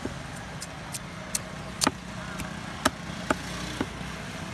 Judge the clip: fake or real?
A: real